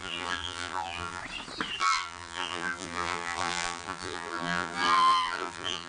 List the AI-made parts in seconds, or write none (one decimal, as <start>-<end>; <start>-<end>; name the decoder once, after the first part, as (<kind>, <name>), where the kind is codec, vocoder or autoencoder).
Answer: 0.0-1.2 (vocoder, BigVGAN v2); 1.8-5.9